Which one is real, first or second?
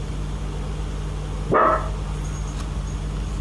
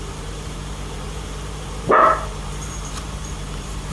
first